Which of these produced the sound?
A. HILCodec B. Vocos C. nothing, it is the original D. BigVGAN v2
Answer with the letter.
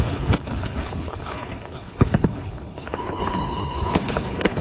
A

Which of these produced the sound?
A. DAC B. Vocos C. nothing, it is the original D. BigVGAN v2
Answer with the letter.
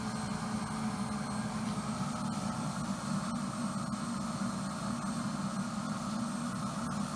C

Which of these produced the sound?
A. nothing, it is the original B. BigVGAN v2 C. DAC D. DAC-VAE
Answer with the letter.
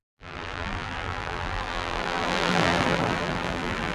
B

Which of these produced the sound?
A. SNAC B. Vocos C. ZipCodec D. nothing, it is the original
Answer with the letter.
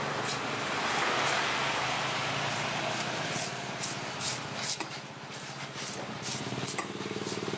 D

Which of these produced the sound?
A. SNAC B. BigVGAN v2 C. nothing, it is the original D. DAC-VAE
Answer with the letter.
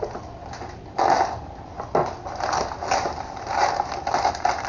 C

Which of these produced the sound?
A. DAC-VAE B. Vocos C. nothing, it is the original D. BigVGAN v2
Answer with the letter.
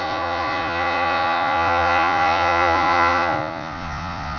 B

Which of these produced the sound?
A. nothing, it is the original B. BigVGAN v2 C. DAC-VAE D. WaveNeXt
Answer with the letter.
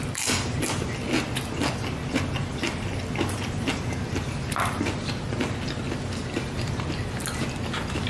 A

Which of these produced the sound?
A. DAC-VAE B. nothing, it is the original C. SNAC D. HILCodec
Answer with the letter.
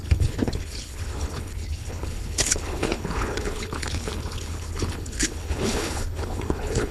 D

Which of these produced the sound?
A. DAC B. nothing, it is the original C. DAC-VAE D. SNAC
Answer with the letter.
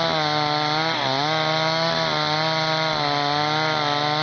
B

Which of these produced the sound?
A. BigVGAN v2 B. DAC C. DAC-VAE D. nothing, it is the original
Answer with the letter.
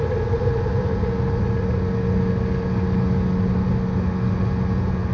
D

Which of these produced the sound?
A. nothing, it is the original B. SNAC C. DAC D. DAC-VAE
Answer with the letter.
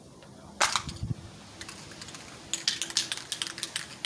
A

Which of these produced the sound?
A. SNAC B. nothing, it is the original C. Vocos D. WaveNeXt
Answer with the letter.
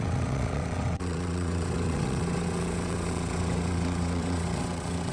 D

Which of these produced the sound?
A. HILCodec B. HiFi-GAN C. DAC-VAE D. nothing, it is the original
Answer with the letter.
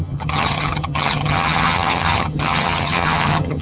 B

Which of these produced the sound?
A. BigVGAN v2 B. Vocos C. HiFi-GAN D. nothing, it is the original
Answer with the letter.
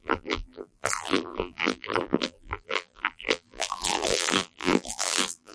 A